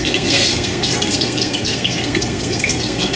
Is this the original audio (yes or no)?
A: no